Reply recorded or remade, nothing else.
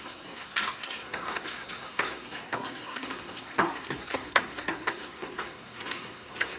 remade